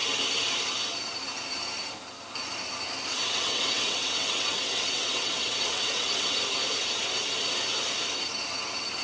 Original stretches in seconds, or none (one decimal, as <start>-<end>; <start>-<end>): 0.0-3.1; 6.3-9.0